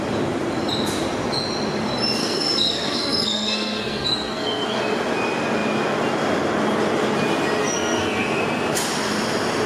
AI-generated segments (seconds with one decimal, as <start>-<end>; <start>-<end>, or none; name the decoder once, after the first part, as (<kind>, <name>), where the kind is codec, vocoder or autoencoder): 2.2-4.8 (codec, SNAC); 7.6-8.4